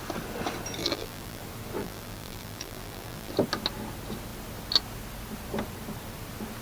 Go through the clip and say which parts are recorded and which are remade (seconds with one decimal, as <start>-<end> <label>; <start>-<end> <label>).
0.0-0.8 recorded; 0.8-1.4 remade; 1.4-1.8 recorded; 1.8-3.3 remade; 3.3-6.6 recorded